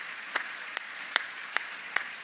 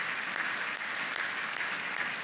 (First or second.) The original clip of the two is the second